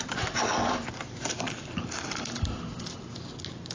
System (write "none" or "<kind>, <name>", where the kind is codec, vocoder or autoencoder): none